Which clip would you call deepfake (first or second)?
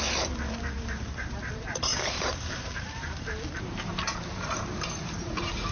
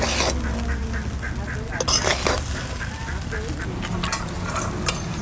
first